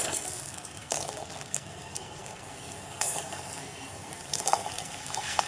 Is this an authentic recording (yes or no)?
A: no